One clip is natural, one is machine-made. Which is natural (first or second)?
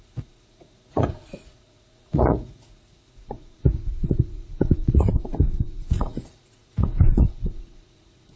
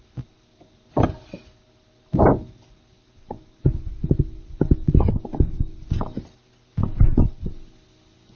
second